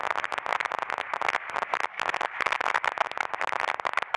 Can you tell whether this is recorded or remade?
recorded